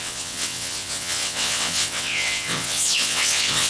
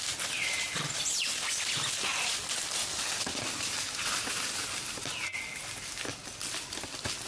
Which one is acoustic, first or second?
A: second